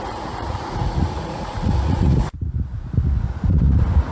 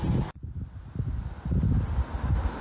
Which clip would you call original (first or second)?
second